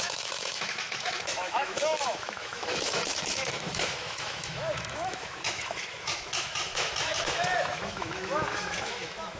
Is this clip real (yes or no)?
no